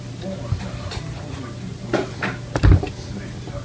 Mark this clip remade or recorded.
recorded